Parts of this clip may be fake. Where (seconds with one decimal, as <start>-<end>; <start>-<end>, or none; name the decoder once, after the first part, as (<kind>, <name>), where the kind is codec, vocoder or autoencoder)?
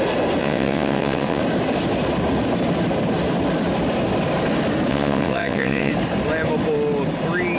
0.4-1.4 (vocoder, WaveNeXt); 4.9-5.9